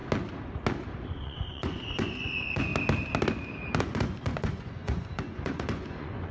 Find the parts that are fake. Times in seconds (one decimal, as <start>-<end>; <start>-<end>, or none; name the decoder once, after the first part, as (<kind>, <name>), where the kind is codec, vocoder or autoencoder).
1.1-2.7 (vocoder, Vocos); 3.8-6.3